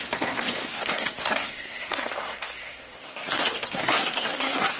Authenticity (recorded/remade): remade